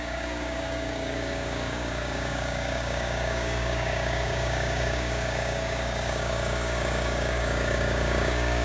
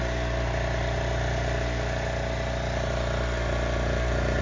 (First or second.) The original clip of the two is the second